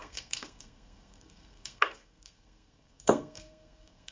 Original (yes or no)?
no